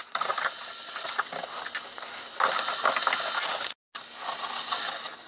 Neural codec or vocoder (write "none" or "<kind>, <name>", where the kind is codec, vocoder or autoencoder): none